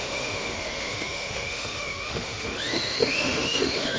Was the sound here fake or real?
fake